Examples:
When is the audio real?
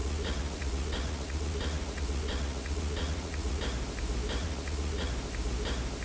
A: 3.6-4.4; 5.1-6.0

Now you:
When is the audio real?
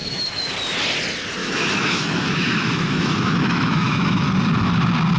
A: 0.5-1.4; 4.2-5.2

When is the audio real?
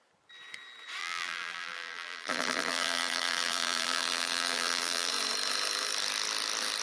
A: 0.0-1.0; 5.1-6.8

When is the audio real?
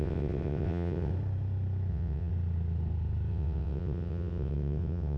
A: 1.1-1.9; 2.3-3.3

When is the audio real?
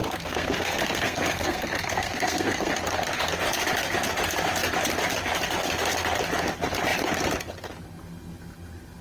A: 2.7-9.0